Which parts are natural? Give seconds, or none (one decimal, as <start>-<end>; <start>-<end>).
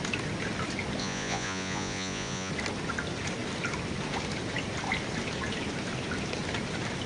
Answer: 0.0-1.0; 2.5-7.1